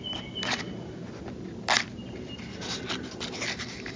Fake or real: real